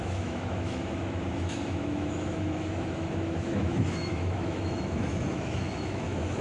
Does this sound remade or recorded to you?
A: remade